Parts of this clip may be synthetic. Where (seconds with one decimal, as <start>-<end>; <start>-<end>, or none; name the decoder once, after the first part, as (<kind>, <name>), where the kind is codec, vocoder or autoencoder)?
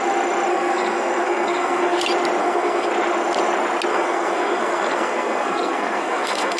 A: 0.5-2.0 (codec, SNAC); 2.4-2.9; 3.9-6.6